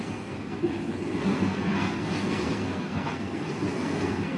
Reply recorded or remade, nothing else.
remade